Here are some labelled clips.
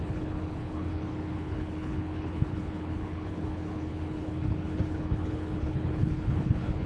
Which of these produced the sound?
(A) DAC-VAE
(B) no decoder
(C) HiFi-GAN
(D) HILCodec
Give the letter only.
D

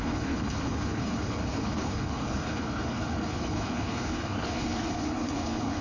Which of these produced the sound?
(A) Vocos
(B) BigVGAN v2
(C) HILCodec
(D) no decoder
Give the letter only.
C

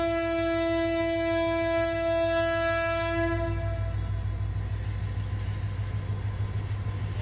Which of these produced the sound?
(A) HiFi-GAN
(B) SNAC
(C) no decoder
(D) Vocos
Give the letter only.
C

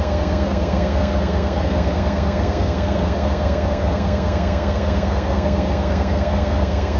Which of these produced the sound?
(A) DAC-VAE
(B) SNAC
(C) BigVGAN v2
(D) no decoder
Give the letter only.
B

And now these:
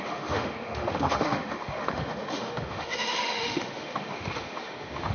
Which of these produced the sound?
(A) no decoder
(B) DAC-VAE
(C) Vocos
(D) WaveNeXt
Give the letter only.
B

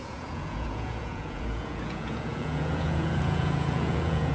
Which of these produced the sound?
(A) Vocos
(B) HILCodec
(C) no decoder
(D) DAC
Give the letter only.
A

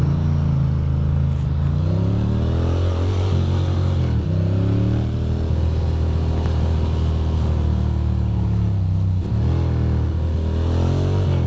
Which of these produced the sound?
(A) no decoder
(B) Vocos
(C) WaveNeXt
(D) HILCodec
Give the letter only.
A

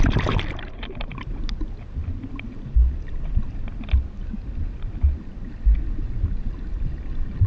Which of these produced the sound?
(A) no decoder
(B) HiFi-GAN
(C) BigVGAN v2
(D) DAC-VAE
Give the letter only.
A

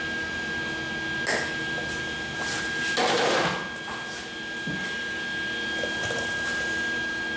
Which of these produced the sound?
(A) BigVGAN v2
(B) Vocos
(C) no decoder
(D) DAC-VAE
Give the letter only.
C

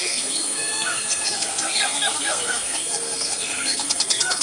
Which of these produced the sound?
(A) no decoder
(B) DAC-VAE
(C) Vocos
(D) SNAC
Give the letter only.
D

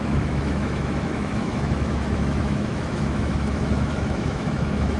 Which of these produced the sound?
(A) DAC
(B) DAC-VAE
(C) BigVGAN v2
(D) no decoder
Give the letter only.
B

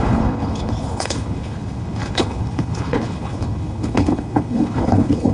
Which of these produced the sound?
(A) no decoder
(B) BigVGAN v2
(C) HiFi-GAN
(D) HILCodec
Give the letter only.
D